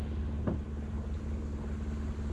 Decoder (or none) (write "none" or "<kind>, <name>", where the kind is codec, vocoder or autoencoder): none